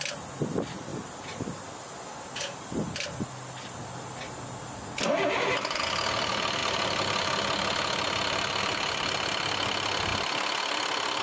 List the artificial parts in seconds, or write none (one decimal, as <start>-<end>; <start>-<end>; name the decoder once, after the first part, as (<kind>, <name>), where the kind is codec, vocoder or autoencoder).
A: none